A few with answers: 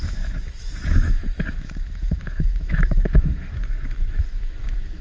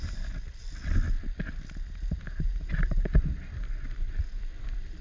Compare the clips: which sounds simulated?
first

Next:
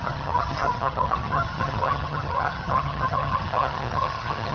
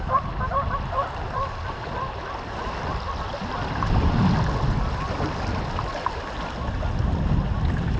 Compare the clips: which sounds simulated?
first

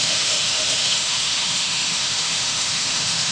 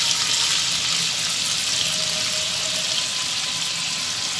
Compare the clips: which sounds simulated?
first